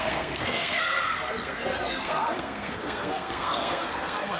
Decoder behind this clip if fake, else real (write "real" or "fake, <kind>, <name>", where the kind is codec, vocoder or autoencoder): fake, codec, SNAC